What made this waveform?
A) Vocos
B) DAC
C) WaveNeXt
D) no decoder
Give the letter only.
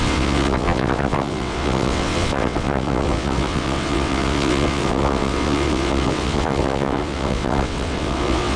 C